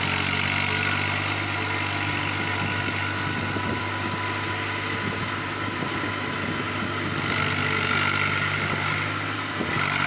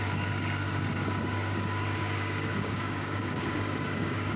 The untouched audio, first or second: first